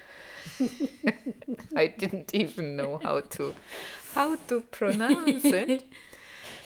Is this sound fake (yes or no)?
yes